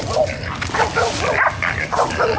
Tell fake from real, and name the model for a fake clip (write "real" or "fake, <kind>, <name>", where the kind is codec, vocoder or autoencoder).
fake, vocoder, BigVGAN v2